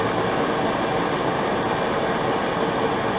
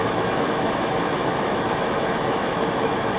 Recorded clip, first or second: first